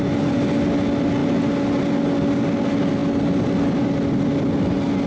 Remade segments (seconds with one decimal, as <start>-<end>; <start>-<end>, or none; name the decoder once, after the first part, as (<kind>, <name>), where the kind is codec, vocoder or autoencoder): none